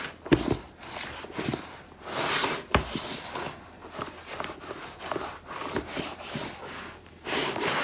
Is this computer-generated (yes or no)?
no